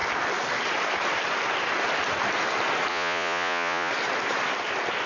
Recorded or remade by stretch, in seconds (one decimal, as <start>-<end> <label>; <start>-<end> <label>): 0.0-2.9 recorded; 2.9-3.9 remade; 3.9-5.1 recorded